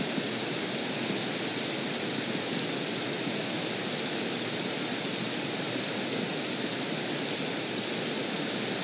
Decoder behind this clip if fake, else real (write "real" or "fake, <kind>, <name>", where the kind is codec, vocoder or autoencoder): real